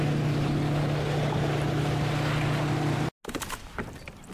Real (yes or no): yes